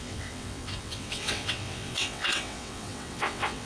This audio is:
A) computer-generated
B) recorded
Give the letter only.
A